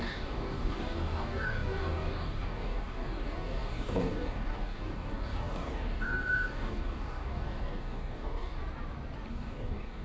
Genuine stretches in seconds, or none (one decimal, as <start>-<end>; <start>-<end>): 8.6-9.3